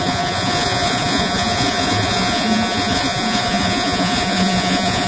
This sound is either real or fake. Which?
fake